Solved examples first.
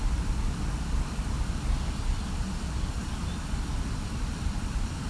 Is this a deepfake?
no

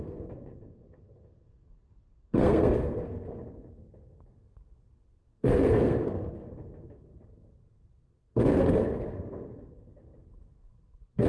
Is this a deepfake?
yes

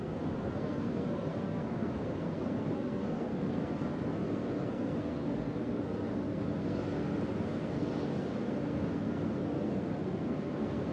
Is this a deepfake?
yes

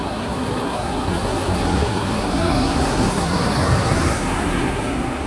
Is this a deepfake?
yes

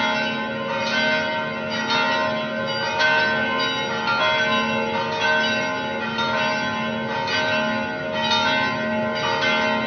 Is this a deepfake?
no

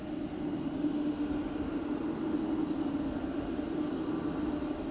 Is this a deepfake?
no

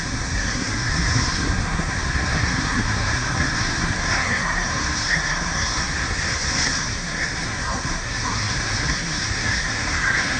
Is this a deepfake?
yes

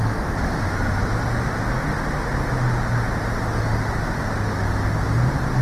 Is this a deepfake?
no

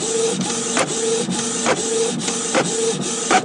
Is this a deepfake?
no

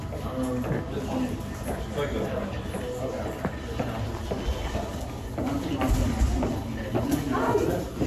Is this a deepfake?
no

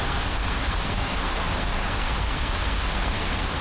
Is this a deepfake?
yes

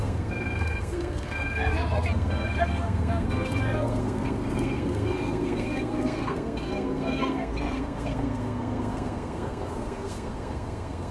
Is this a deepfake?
yes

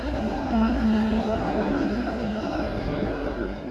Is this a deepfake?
yes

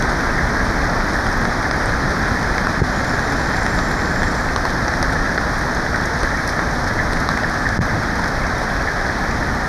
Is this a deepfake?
no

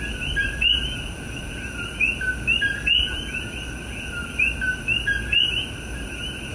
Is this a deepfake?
no